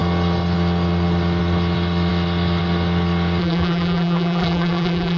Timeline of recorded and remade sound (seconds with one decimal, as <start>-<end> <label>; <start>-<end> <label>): 0.0-3.4 recorded; 3.4-5.2 remade